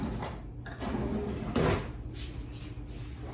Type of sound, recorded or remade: recorded